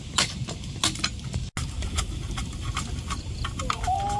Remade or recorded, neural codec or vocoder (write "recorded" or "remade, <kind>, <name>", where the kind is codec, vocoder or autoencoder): recorded